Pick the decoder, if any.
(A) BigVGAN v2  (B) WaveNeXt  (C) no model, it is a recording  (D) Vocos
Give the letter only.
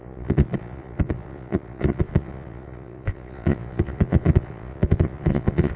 D